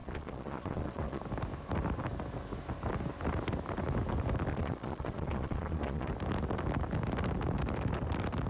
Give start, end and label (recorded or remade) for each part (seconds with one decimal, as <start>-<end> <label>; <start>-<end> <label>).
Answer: 0.0-1.2 remade; 1.2-4.5 recorded; 4.5-6.1 remade; 6.1-8.5 recorded